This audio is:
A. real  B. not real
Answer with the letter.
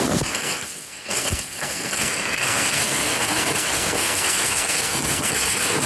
B